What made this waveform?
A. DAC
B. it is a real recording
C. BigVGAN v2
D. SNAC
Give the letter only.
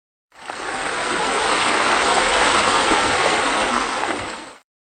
D